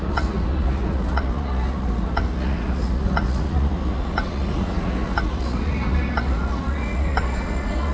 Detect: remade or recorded remade